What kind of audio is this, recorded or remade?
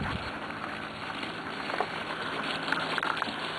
recorded